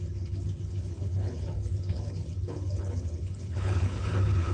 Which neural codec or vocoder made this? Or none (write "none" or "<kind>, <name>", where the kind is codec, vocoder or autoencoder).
codec, HILCodec